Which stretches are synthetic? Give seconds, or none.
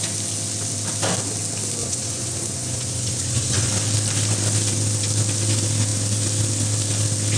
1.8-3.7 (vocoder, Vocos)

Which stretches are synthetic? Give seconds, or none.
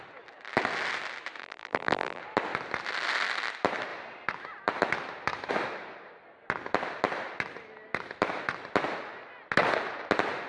1.4-2.2 (vocoder, BigVGAN v2)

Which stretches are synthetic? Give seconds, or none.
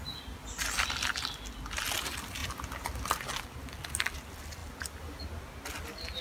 none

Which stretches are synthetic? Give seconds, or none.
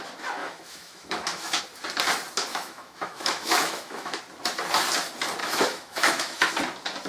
0.4-1.6 (autoencoder, DAC-VAE); 2.5-4.2; 5.4-6.5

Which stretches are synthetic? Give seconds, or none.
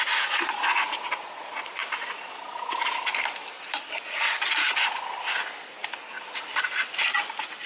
none